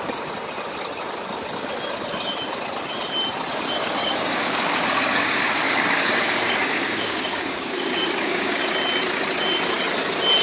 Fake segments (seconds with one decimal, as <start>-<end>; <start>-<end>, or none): 3.8-8.6